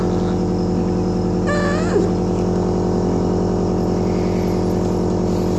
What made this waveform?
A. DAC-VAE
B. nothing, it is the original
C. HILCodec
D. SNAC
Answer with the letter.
B